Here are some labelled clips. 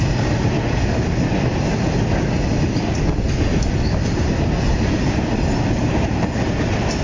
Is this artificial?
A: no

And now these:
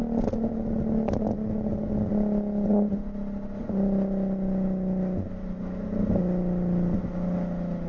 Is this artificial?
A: no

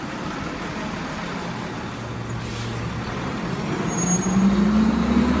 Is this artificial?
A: no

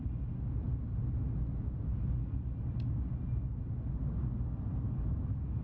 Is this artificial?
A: no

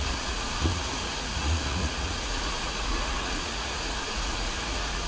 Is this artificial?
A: yes